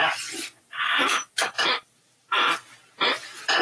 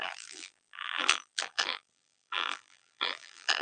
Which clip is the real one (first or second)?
first